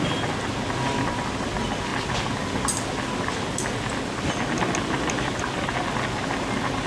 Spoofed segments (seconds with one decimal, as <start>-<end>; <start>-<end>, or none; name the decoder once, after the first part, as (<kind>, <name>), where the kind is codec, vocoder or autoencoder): none